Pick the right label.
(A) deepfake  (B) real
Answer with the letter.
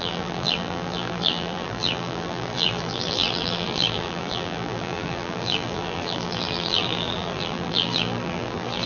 A